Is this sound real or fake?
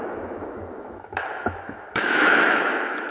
fake